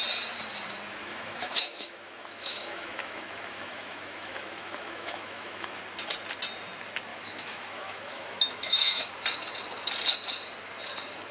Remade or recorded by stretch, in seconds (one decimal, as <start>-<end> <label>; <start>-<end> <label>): 0.0-1.0 recorded; 1.0-5.8 remade; 5.8-7.1 recorded; 7.1-9.1 remade; 9.1-11.3 recorded